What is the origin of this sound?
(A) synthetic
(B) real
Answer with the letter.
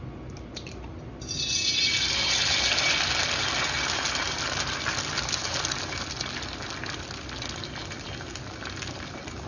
B